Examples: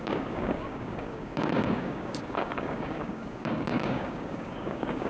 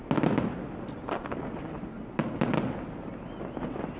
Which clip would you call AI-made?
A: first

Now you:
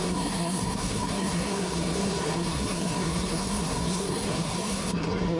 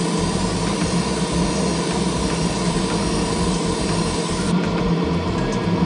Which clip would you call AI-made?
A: first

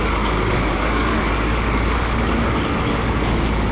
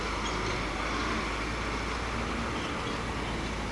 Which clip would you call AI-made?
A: first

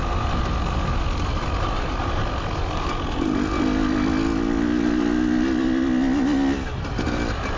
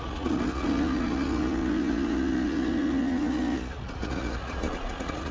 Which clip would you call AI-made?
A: second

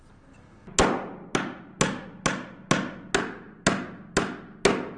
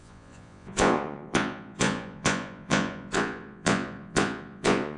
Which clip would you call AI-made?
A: second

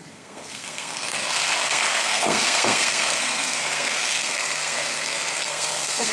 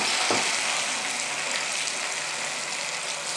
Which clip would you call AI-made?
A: first